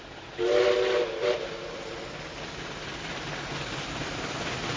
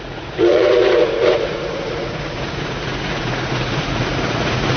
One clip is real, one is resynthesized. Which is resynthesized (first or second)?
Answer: second